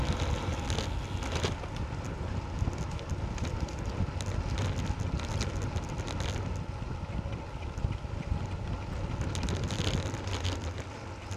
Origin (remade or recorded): recorded